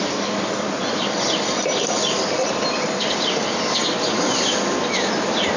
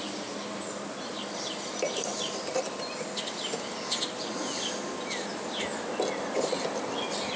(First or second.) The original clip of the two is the second